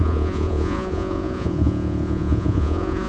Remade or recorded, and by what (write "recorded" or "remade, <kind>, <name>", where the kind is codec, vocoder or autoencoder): remade, vocoder, Vocos